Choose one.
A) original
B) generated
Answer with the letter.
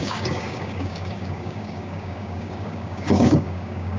B